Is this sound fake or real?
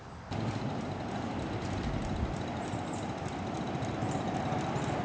real